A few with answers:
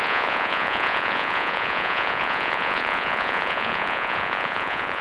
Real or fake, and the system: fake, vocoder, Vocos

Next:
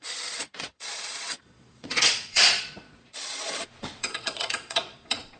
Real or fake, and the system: fake, vocoder, Vocos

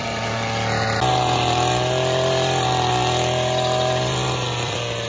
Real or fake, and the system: fake, vocoder, BigVGAN v2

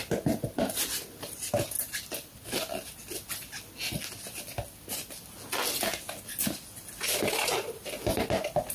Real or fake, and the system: real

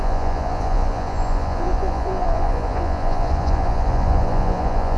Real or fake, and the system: fake, vocoder, Vocos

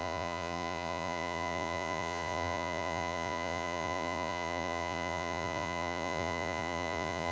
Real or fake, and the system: fake, vocoder, Vocos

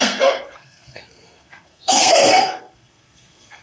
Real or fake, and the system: fake, codec, SNAC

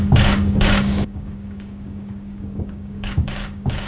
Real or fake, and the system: fake, codec, DAC